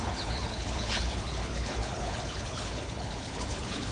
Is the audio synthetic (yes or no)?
yes